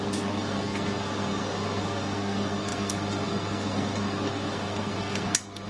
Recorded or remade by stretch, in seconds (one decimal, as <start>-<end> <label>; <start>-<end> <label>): 0.0-5.7 remade